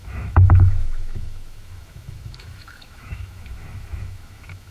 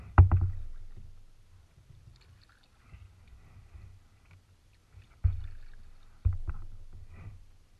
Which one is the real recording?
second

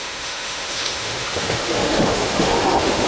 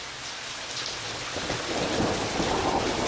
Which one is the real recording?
second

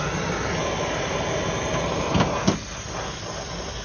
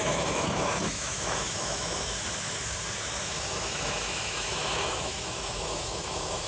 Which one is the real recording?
first